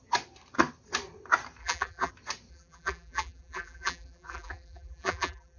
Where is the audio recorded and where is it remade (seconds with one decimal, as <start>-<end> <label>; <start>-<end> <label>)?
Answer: 0.0-1.6 recorded; 1.6-2.1 remade; 2.1-2.5 recorded; 2.5-5.6 remade